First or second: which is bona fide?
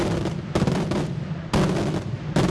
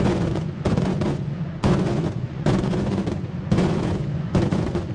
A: first